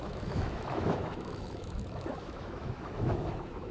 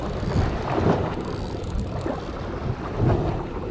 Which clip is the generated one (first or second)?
first